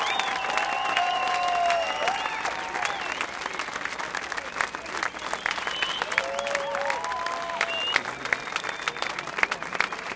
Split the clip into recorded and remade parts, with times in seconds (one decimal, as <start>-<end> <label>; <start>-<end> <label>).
0.0-10.2 recorded